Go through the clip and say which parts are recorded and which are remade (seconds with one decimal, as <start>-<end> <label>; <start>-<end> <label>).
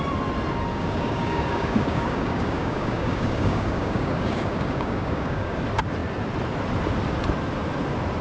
0.0-0.7 recorded; 0.7-5.6 remade; 5.6-8.2 recorded